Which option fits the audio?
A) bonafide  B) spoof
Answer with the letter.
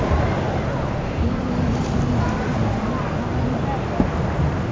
A